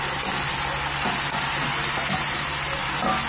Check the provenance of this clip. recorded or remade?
recorded